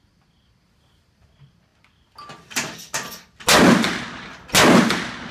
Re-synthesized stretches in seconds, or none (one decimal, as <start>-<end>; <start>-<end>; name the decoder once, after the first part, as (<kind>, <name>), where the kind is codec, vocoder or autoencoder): none